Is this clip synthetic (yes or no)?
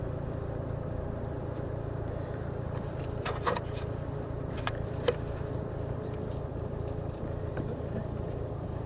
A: yes